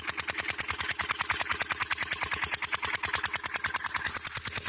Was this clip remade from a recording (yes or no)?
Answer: no